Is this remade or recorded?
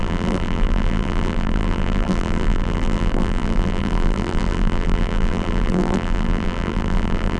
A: remade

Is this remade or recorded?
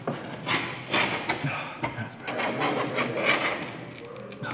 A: recorded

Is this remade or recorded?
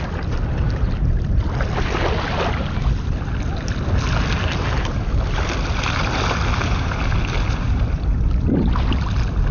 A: recorded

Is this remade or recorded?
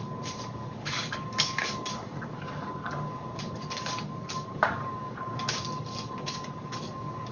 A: remade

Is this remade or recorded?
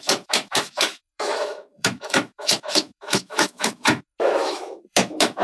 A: remade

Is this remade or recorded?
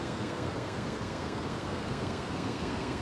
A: remade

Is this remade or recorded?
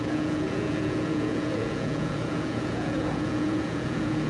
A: remade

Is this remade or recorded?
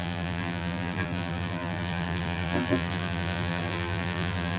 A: remade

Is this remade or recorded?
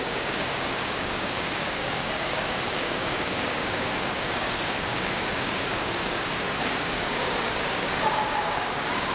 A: remade